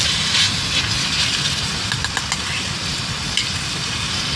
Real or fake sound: real